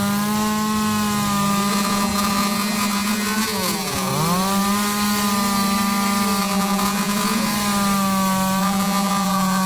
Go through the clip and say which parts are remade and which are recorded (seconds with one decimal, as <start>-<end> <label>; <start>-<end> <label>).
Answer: 0.0-1.7 recorded; 1.7-4.1 remade; 4.1-6.4 recorded; 6.4-7.5 remade; 7.5-8.6 recorded; 8.6-9.7 remade

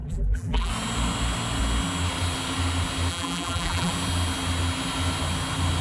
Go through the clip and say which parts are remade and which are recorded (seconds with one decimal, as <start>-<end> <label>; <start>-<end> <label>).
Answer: 0.0-0.7 remade; 0.7-3.1 recorded; 3.1-3.9 remade; 3.9-5.8 recorded

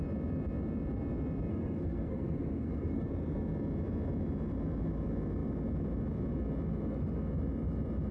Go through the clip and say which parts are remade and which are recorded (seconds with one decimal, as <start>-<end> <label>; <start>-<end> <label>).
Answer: 0.0-1.5 recorded; 1.5-3.1 remade; 3.1-8.1 recorded